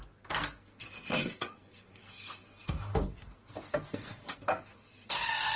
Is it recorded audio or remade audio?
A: remade